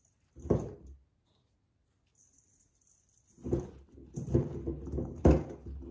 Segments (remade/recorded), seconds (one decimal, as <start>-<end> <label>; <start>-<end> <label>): 0.0-5.9 recorded